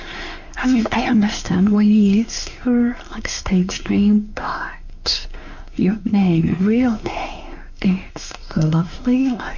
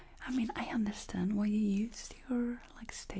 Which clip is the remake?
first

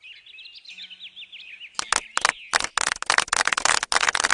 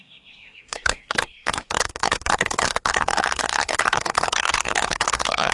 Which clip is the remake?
second